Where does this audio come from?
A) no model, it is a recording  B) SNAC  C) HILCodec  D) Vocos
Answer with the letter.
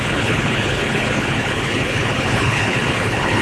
C